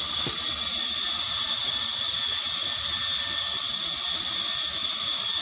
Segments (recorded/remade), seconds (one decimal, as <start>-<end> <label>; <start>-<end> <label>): 0.0-5.4 recorded

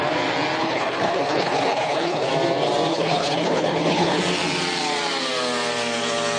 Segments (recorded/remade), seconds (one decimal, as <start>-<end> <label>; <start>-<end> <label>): 0.0-0.6 recorded; 0.6-2.3 remade; 2.3-2.9 recorded; 2.9-4.2 remade; 4.2-6.4 recorded

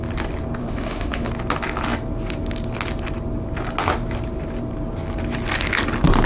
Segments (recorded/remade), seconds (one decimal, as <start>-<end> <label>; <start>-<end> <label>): 0.0-0.6 recorded; 0.6-1.3 remade; 1.3-6.3 recorded

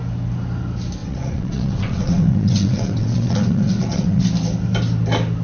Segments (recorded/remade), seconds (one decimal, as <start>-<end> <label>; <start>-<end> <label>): 0.0-1.0 recorded; 1.0-4.2 remade; 4.2-5.4 recorded

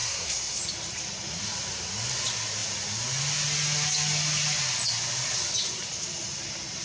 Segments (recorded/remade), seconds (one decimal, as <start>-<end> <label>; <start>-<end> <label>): 0.0-0.6 remade; 0.6-6.8 recorded

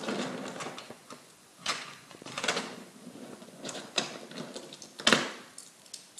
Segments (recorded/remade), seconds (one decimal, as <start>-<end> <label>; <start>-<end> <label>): 0.0-0.6 recorded; 0.6-4.0 remade; 4.0-6.2 recorded

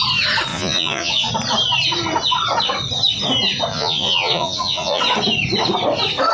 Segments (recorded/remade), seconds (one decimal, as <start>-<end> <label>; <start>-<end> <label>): 0.0-0.5 recorded; 0.5-1.3 remade; 1.3-3.7 recorded; 3.7-5.0 remade; 5.0-6.3 recorded

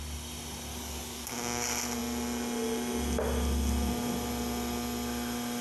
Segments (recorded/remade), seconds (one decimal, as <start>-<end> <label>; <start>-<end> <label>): 0.0-0.7 recorded; 0.7-1.3 remade; 1.3-5.6 recorded